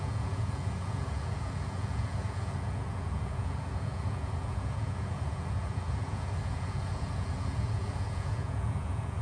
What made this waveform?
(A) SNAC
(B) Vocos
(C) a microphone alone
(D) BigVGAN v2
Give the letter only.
B